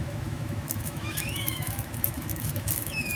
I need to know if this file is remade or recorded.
remade